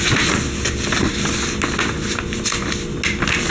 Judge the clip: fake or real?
real